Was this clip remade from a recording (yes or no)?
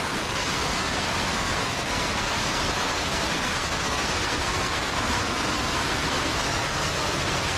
yes